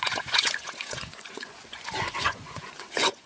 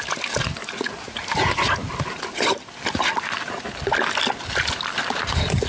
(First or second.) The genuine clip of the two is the second